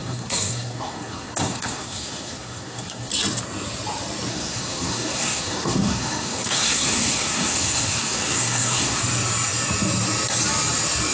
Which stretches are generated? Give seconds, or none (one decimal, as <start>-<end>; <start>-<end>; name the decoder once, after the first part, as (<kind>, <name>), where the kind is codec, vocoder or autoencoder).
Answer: 0.0-3.1 (codec, SNAC); 4.3-9.0